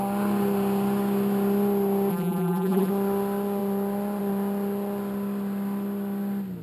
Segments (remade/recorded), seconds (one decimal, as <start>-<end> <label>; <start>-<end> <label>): 0.0-2.1 recorded; 2.1-2.9 remade; 2.9-6.6 recorded